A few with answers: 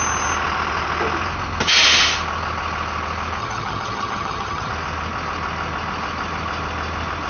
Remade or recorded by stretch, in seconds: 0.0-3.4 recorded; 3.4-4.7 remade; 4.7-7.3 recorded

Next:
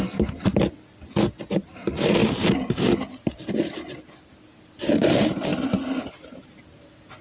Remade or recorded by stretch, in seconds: 0.0-7.2 recorded

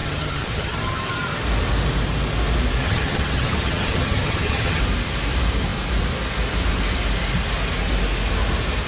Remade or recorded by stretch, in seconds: 0.0-1.0 remade; 1.0-2.8 recorded; 2.8-4.8 remade; 4.8-8.9 recorded

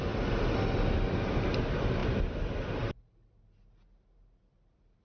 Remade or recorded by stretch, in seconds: 0.0-5.0 recorded